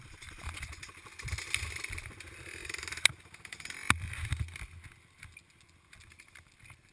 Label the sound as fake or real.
real